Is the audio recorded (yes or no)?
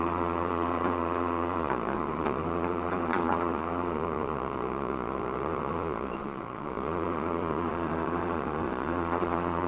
no